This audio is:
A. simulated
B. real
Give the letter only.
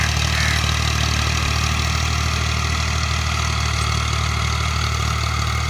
B